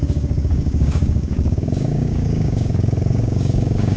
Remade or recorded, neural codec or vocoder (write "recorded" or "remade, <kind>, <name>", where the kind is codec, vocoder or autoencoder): remade, codec, DAC